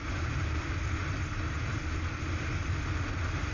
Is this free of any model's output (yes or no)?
yes